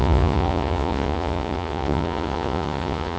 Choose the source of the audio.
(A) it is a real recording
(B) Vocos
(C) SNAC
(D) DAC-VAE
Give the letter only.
B